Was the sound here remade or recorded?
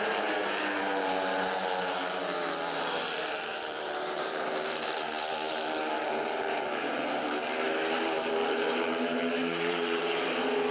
remade